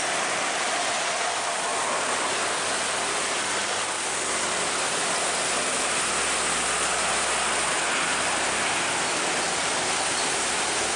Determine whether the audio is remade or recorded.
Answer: recorded